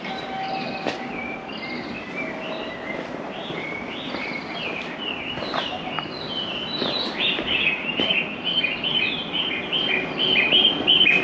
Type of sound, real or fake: fake